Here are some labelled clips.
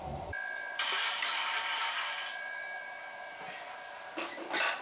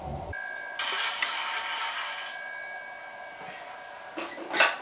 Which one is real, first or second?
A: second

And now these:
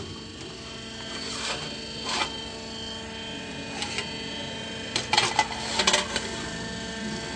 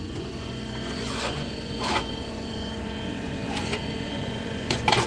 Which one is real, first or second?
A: first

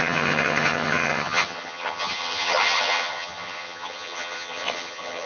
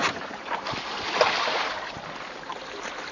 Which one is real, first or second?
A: second